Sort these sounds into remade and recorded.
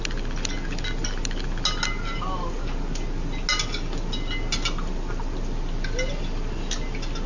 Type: recorded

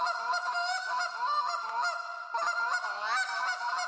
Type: recorded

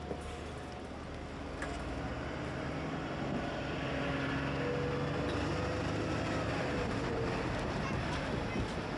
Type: recorded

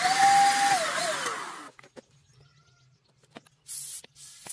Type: recorded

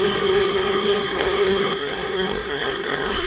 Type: remade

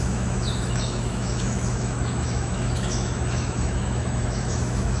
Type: remade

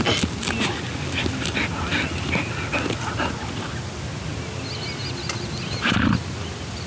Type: recorded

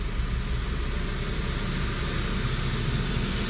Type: recorded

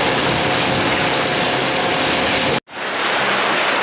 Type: recorded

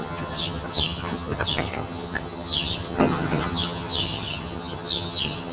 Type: remade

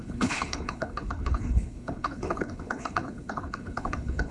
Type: remade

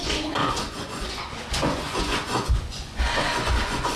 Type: remade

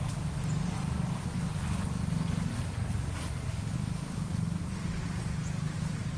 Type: recorded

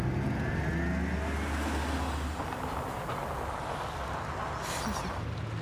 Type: recorded